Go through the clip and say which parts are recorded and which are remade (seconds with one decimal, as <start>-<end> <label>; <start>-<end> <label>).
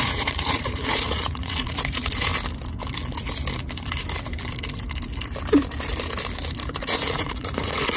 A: 0.0-2.3 remade; 2.3-6.8 recorded; 6.8-8.0 remade